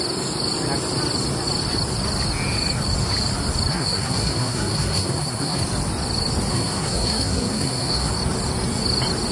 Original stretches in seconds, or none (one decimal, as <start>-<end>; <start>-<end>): 0.0-3.7; 5.6-6.5; 8.1-9.3